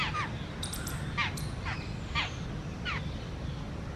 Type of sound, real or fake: real